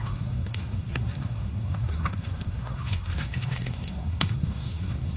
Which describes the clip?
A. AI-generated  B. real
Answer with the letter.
A